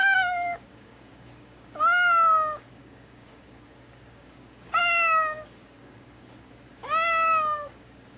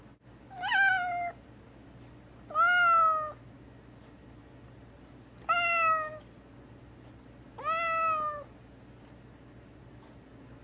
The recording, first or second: second